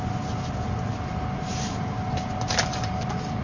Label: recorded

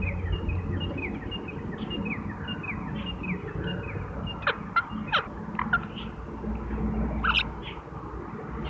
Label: recorded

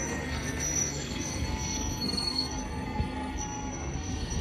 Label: remade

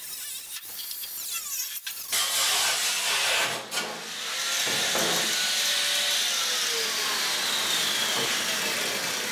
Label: recorded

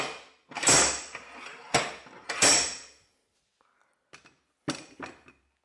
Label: recorded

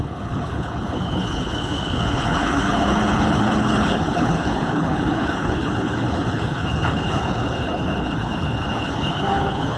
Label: remade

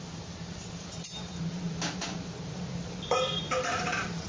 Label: remade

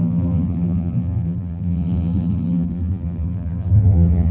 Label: remade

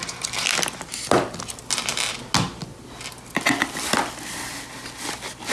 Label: recorded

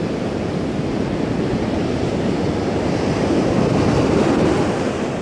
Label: remade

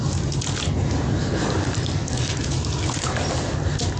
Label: recorded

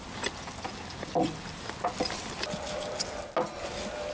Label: recorded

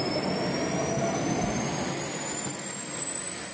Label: recorded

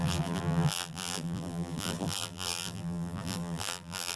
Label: remade